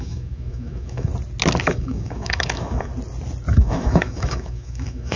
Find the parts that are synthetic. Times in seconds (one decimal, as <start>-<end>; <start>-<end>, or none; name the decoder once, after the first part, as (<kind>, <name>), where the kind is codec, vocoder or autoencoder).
0.0-1.1 (autoencoder, DAC-VAE); 1.6-2.9; 3.5-5.2